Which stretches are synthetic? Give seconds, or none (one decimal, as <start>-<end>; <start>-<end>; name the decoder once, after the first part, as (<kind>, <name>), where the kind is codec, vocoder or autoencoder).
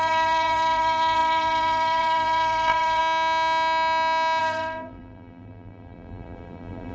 0.0-3.0 (vocoder, BigVGAN v2); 4.4-6.9